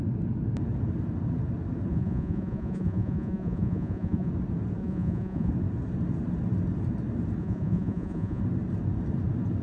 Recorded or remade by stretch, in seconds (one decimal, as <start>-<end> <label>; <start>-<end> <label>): 0.0-1.9 recorded; 1.9-4.3 remade; 4.3-4.8 recorded; 4.8-5.5 remade; 5.5-7.4 recorded; 7.4-8.4 remade; 8.4-9.6 recorded